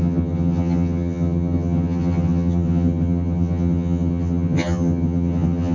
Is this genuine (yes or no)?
no